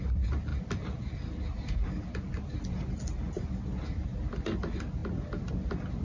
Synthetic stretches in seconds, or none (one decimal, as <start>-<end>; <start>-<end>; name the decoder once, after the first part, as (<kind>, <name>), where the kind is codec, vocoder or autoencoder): none